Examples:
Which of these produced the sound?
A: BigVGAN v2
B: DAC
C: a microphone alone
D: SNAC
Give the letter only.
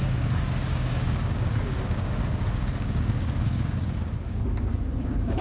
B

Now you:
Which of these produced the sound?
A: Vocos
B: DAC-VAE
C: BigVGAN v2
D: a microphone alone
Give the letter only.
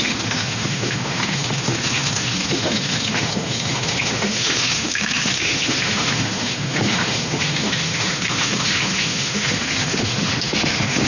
B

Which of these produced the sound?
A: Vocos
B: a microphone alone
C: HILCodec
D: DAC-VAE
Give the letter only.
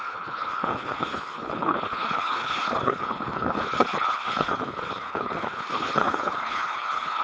C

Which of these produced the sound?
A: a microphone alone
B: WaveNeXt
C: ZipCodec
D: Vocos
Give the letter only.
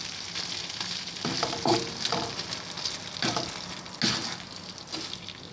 A